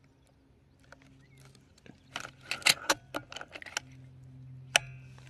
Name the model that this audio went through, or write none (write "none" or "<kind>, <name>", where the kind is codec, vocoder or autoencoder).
none